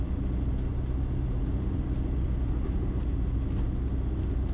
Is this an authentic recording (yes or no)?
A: yes